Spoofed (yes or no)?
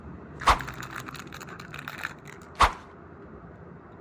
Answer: no